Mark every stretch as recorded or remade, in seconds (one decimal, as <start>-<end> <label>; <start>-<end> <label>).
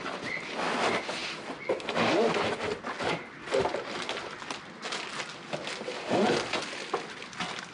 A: 0.0-7.7 recorded